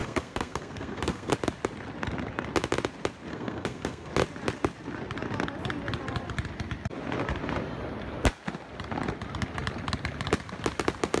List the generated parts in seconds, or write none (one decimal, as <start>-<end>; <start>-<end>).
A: 0.0-1.3; 3.3-4.1